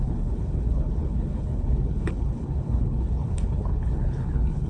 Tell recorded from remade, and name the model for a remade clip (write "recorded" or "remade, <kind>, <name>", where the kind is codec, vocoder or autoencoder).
remade, codec, HILCodec